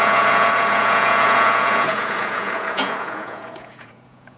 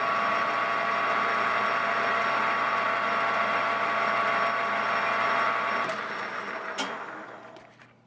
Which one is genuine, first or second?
second